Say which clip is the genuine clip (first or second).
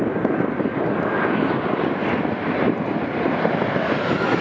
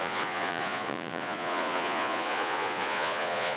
first